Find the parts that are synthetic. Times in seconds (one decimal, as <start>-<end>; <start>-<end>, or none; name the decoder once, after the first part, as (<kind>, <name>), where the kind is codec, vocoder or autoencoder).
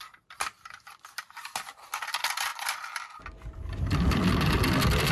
none